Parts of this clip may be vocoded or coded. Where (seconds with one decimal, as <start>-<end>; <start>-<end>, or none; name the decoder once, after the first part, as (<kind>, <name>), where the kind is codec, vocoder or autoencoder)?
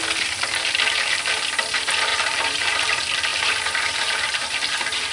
2.1-2.8 (vocoder, BigVGAN v2); 3.3-5.1